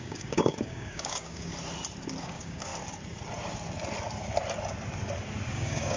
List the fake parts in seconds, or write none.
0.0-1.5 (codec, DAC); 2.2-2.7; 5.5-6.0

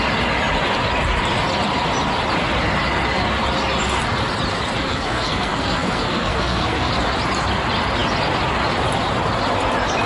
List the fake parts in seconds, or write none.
4.9-6.9 (codec, SNAC)

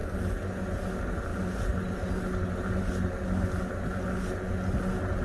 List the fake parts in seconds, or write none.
none

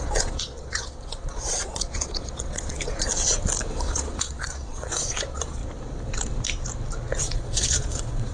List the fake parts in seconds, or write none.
0.0-3.1 (vocoder, Vocos); 3.7-5.6; 7.2-8.3

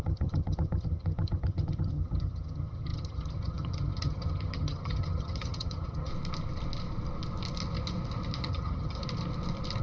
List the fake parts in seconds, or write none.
0.0-6.1 (vocoder, HiFi-GAN); 8.5-9.0

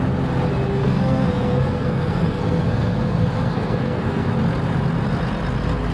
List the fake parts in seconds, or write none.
0.8-4.3 (codec, SNAC)

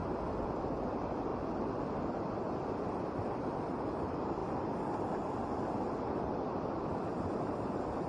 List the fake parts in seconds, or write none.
0.9-4.4 (vocoder, BigVGAN v2); 6.4-8.1